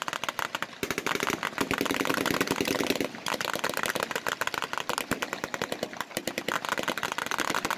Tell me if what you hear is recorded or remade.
recorded